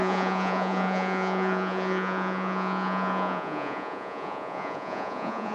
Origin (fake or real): fake